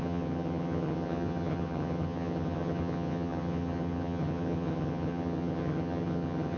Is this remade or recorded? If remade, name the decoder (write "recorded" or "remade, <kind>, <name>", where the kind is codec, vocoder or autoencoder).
remade, vocoder, HiFi-GAN